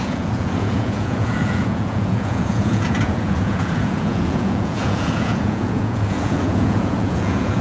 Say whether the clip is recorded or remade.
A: remade